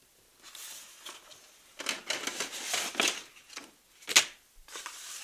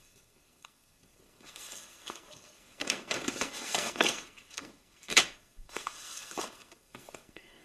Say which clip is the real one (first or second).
first